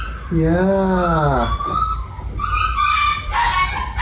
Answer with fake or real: real